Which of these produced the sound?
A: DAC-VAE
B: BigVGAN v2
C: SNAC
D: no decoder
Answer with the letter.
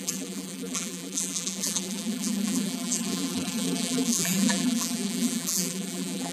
B